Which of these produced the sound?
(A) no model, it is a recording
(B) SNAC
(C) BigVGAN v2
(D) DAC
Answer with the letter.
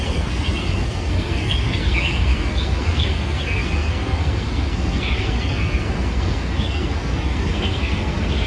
B